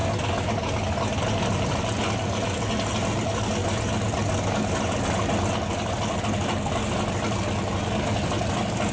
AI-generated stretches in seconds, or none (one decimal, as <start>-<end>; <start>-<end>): none